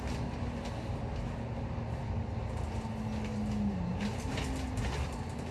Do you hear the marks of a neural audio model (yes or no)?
no